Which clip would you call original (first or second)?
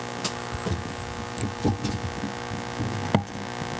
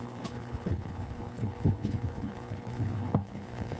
first